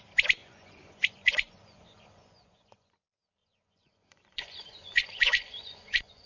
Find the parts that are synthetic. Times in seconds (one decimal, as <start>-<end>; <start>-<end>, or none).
0.4-2.9; 3.4-6.3